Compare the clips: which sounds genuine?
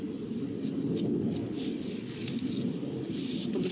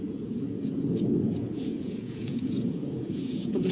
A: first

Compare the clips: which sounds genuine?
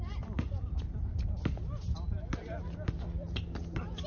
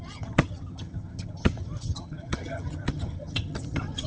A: first